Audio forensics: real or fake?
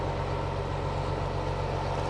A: real